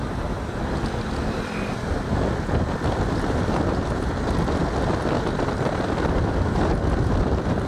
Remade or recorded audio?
recorded